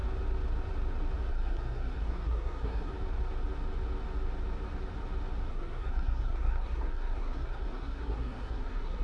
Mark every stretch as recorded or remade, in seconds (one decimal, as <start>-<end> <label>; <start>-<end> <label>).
0.0-1.3 recorded; 1.3-2.9 remade; 2.9-5.5 recorded; 5.5-9.0 remade